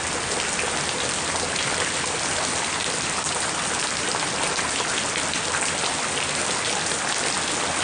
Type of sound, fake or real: real